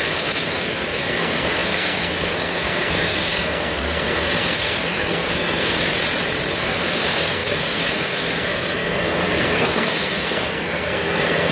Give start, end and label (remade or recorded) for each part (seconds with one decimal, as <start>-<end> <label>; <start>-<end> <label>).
0.0-5.9 remade; 5.9-6.6 recorded; 6.6-11.5 remade